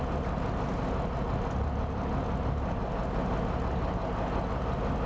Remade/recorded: recorded